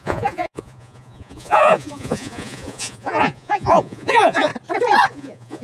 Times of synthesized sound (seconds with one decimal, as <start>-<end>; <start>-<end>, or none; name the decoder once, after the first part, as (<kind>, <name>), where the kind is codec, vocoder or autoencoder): 0.0-4.5 (vocoder, Vocos); 5.1-5.6